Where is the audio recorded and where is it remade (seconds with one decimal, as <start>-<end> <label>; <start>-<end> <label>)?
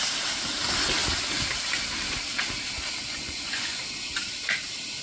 0.0-3.1 recorded; 3.1-3.8 remade; 3.8-5.0 recorded